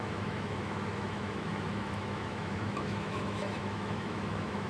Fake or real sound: fake